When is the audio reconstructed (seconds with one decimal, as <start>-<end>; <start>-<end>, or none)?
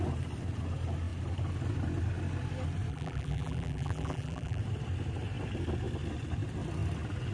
2.9-4.6